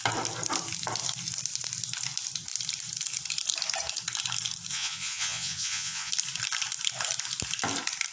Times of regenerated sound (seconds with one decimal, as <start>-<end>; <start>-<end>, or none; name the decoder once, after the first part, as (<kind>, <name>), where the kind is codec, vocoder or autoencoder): 4.7-6.1 (vocoder, Vocos)